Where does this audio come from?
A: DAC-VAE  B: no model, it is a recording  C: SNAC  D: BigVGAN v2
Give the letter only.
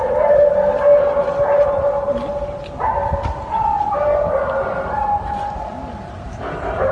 B